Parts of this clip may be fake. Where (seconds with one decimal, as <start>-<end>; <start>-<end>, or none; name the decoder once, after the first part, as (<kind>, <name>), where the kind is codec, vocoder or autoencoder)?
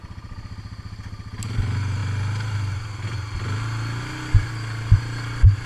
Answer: none